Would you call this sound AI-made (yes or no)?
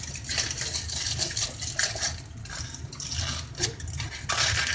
no